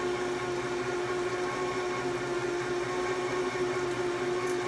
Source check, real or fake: real